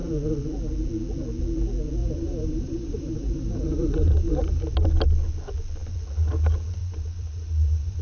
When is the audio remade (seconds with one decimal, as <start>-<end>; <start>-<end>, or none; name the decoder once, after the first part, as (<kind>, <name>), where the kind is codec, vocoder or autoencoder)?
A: 2.0-4.6 (vocoder, BigVGAN v2); 6.8-8.0